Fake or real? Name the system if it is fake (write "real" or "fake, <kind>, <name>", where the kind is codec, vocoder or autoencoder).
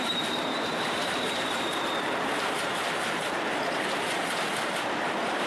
fake, vocoder, BigVGAN v2